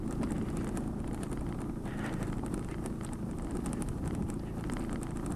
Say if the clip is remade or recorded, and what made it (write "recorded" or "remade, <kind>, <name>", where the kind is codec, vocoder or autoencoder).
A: recorded